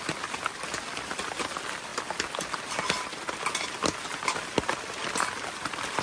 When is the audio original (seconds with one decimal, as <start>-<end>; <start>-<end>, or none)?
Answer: 0.0-6.0